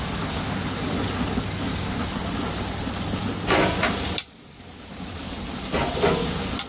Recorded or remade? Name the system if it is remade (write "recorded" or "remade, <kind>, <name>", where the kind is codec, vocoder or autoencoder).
recorded